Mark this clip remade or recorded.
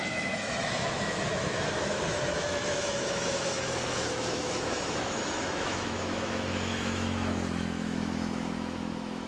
remade